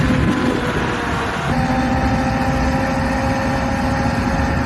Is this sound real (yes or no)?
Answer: yes